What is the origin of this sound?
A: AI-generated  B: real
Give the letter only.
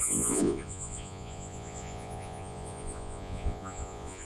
A